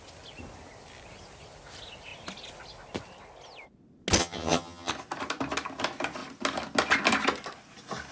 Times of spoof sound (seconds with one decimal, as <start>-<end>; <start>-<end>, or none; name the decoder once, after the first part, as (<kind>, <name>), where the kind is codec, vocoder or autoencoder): 4.2-4.9 (vocoder, HiFi-GAN)